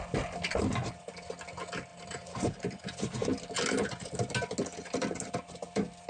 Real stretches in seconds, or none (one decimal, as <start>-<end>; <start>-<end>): 0.0-1.9; 2.7-6.1